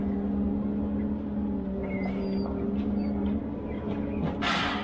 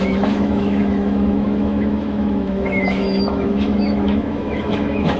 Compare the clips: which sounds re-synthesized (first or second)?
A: second